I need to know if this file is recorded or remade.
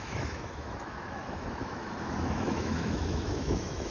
remade